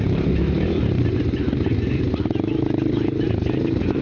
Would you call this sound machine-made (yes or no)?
no